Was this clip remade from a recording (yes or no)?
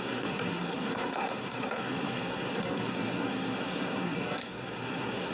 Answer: yes